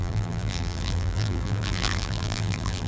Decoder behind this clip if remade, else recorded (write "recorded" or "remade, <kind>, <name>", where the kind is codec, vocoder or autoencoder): remade, vocoder, BigVGAN v2